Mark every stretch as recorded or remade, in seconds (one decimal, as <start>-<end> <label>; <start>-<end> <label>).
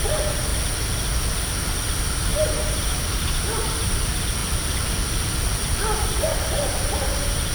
0.0-2.3 recorded; 2.3-4.0 remade; 4.0-7.5 recorded